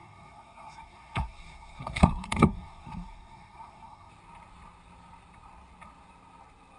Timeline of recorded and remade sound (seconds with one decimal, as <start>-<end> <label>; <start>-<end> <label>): 0.0-4.1 remade; 4.1-6.8 recorded